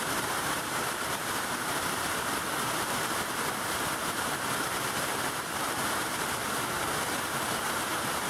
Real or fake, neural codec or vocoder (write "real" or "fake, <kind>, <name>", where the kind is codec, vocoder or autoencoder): fake, vocoder, BigVGAN v2